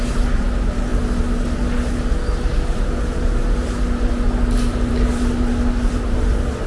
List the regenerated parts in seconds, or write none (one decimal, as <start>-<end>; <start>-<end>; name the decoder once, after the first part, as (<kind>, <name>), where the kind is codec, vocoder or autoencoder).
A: none